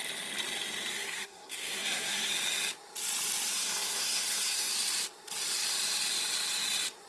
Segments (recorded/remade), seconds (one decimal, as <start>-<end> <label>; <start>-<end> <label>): 0.0-0.9 recorded; 0.9-2.3 remade; 2.3-3.5 recorded; 3.5-4.7 remade; 4.7-7.1 recorded